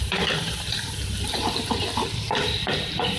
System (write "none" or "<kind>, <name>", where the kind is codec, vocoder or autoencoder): vocoder, BigVGAN v2